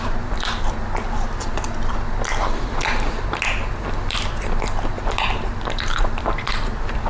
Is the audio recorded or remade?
recorded